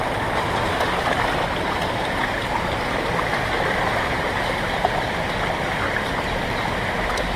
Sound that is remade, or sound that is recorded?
recorded